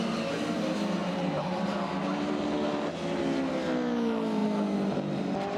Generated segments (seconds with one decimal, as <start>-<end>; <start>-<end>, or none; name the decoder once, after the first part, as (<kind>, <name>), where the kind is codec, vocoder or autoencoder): none